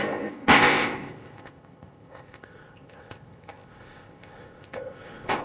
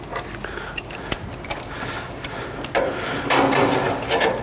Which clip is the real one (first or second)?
second